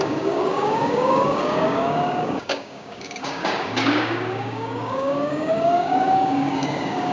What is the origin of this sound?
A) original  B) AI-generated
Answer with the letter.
B